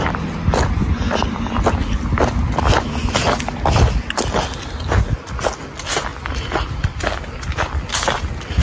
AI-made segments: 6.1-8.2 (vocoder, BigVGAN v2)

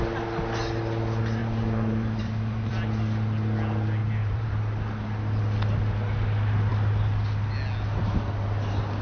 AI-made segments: 1.4-2.7 (vocoder, BigVGAN v2); 4.0-4.5